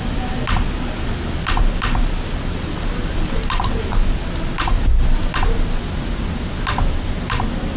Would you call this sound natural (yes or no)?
yes